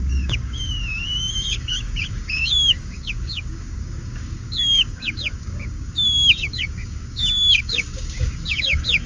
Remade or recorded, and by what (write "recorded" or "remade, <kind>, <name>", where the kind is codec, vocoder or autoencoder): remade, codec, DAC